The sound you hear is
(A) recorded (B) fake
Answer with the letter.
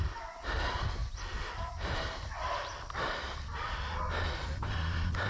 A